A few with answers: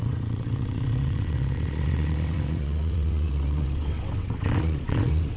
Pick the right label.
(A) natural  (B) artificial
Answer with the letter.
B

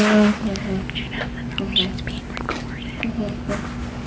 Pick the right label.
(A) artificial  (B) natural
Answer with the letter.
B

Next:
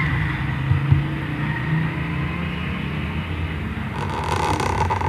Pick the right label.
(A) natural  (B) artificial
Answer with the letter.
A